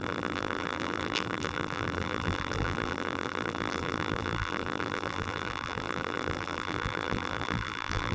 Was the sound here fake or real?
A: fake